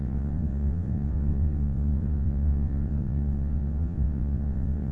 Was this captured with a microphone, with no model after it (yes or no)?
no